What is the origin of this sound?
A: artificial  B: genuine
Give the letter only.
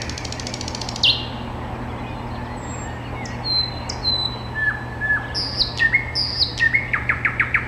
B